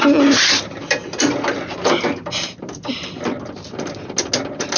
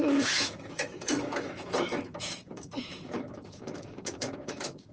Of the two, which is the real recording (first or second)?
first